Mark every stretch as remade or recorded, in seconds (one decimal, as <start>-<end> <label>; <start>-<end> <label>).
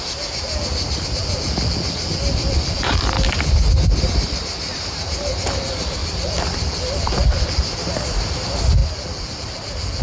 0.0-1.2 recorded; 1.2-3.0 remade; 3.0-6.0 recorded; 6.0-7.5 remade; 7.5-8.8 recorded; 8.8-10.0 remade